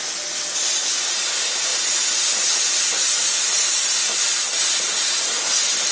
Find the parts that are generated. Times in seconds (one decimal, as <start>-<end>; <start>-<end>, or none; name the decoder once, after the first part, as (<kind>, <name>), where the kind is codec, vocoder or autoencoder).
none